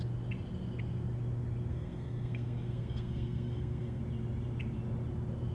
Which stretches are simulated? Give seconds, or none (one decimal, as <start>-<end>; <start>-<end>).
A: 1.7-4.0